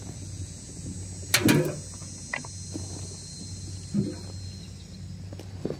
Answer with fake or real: real